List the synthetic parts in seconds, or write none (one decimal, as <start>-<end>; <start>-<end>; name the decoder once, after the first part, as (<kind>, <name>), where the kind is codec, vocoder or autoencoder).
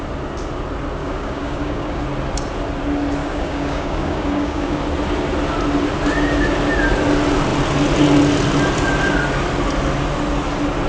1.0-2.0 (codec, DAC); 3.2-4.8